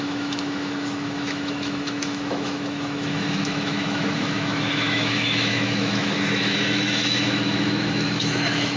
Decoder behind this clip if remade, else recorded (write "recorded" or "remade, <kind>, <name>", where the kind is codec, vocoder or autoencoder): remade, autoencoder, DAC-VAE